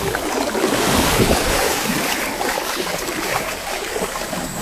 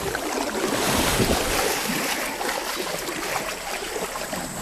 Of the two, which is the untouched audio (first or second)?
second